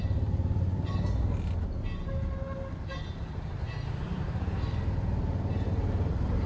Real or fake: real